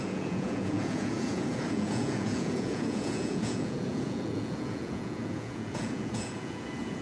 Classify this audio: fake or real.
fake